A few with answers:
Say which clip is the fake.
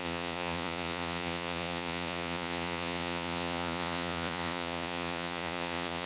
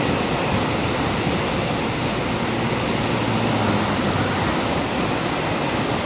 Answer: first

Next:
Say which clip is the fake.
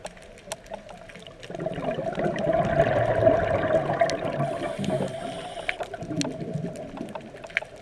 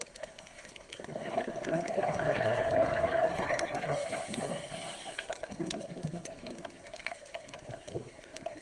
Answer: second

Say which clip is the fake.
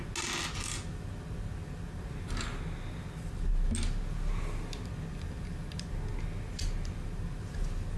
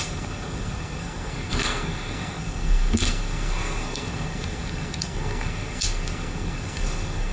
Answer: second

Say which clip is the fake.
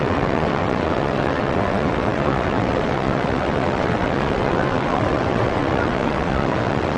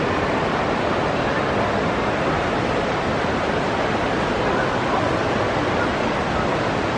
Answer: first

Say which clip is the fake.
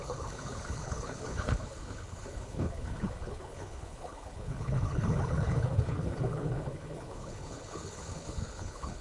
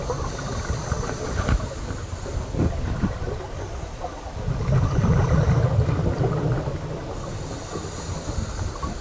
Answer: first